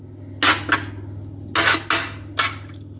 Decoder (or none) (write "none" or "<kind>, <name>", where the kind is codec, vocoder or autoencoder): none